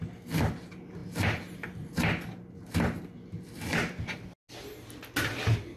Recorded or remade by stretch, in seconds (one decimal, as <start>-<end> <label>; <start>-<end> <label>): 0.0-5.8 recorded

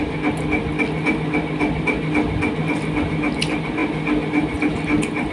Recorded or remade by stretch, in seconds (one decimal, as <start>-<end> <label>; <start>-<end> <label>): 0.0-5.3 recorded